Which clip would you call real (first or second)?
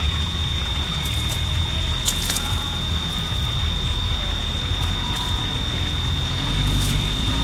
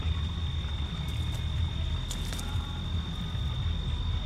second